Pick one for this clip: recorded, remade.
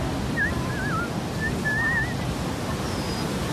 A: recorded